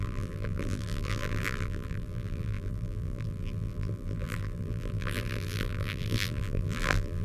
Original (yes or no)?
no